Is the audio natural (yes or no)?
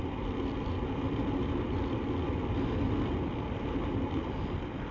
yes